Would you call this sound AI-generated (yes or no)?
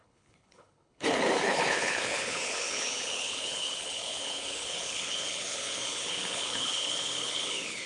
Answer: yes